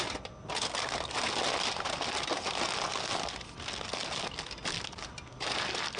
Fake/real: real